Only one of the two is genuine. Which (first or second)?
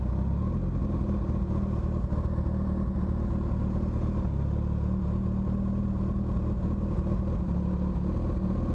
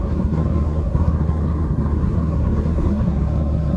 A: first